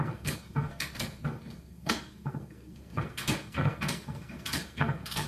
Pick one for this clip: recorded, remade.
remade